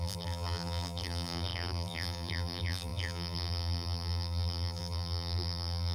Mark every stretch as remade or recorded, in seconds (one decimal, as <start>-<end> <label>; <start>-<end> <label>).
0.0-5.9 remade